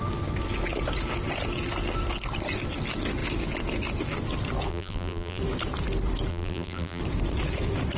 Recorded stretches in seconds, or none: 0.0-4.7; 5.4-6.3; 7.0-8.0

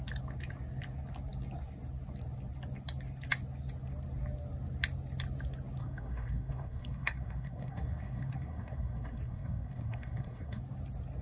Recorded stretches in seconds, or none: 0.0-5.8; 10.6-11.2

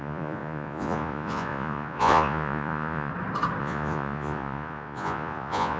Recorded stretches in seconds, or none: 3.1-3.6

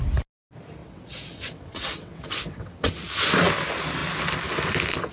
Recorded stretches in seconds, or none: 0.0-0.8; 2.9-5.1

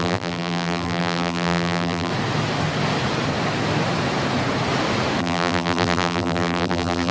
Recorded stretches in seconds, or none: 2.1-5.2

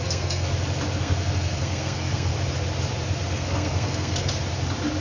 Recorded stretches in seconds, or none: 0.5-1.0; 2.3-3.3; 4.4-5.0

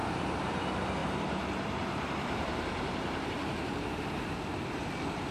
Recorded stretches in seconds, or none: 0.6-1.0; 4.2-5.3